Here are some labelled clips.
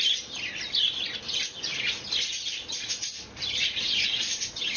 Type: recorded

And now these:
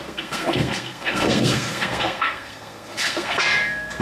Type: remade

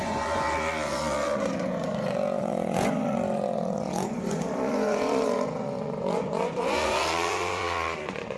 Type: remade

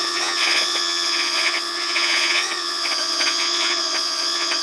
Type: remade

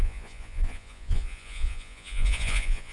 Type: remade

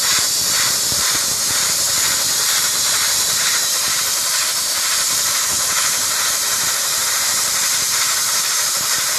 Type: remade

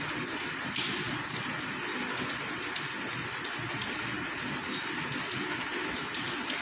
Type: recorded